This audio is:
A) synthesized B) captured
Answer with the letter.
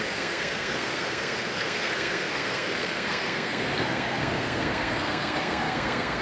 A